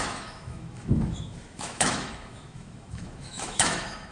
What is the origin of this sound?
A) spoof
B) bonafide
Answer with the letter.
A